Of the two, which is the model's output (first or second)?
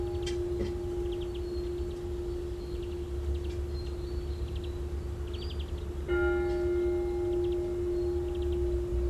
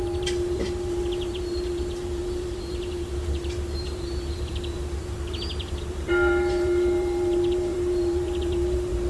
second